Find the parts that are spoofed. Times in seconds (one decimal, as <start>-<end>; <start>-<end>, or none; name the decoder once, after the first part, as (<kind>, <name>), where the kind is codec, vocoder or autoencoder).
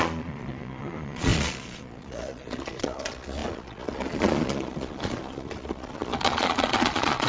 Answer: 0.0-7.3 (vocoder, Vocos)